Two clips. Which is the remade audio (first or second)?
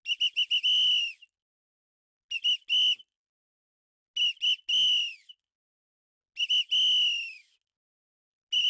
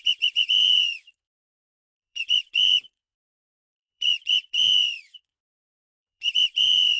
second